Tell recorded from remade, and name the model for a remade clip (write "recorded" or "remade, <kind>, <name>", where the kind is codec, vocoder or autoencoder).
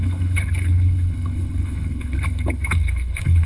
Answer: remade, codec, HILCodec